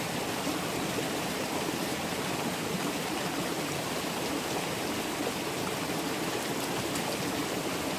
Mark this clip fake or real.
real